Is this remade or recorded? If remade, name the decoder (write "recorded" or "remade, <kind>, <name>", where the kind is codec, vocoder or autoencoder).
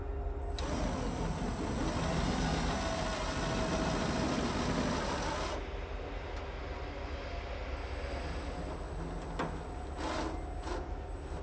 recorded